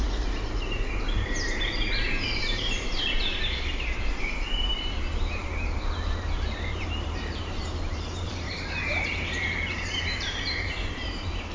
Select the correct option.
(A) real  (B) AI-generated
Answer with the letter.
B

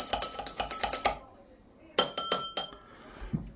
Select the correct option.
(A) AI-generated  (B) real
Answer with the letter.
B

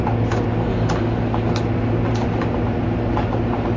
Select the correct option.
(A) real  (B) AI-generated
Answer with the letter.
A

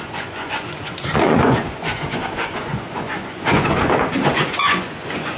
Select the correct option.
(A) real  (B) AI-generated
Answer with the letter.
B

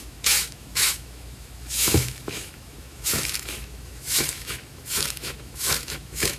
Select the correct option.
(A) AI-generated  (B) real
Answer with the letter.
A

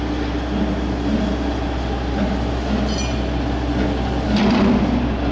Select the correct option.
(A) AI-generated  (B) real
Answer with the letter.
B